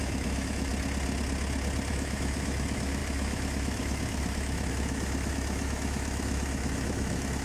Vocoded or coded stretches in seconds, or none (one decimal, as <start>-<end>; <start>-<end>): 0.0-0.7; 1.9-7.4